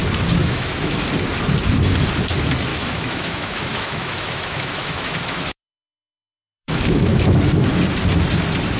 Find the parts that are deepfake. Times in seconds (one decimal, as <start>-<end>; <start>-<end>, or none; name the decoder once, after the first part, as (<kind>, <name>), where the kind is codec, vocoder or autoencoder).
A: 0.4-1.0 (autoencoder, DAC-VAE); 2.7-7.4